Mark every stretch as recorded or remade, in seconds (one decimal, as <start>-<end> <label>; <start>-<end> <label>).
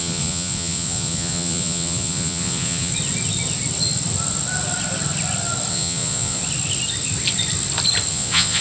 0.0-2.9 remade; 2.9-5.7 recorded; 5.7-6.4 remade; 6.4-8.1 recorded; 8.1-8.6 remade